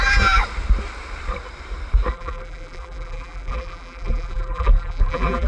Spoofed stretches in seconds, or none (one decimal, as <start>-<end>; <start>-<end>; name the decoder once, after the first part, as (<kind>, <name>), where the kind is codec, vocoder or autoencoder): 2.1-5.5 (vocoder, BigVGAN v2)